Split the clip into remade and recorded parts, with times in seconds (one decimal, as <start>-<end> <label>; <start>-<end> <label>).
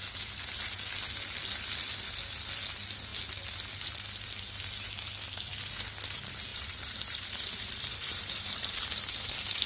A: 0.0-6.5 recorded; 6.5-9.1 remade; 9.1-9.7 recorded